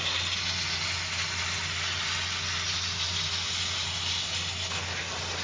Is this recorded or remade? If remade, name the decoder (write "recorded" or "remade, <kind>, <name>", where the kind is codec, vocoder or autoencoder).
recorded